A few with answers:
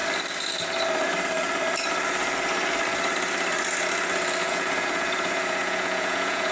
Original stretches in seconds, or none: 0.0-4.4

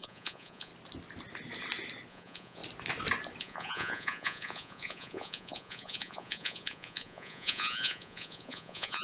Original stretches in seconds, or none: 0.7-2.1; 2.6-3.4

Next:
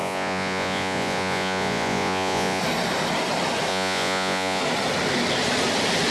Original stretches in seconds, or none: 2.6-3.7; 4.6-6.1

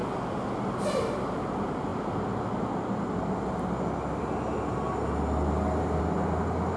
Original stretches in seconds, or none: 0.0-6.8

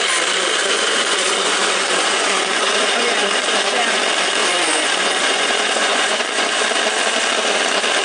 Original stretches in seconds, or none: 0.0-0.6; 4.0-4.4; 6.6-8.0